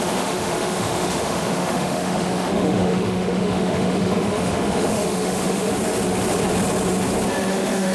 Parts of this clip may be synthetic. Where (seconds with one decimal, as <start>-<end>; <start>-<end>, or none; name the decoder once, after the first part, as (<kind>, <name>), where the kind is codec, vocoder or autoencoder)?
0.0-5.7 (autoencoder, DAC-VAE); 7.5-7.9